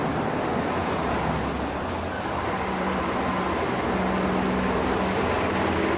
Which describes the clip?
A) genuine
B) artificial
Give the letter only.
A